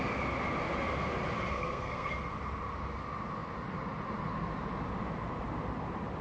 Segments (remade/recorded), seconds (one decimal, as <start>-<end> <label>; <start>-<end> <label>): 0.0-1.5 recorded; 1.5-2.1 remade; 2.1-6.2 recorded